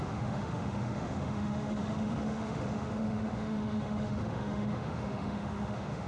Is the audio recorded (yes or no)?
no